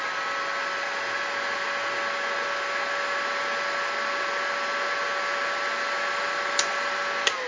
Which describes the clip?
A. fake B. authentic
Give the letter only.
B